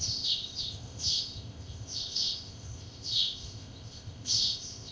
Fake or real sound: fake